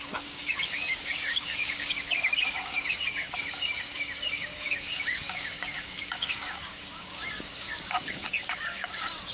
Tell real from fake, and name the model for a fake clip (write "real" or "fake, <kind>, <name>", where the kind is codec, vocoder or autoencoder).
fake, codec, DAC